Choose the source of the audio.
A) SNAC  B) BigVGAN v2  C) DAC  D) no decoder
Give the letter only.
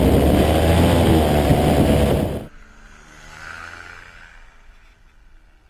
D